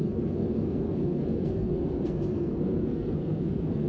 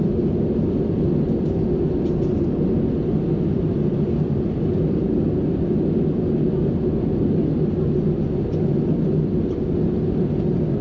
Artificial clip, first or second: first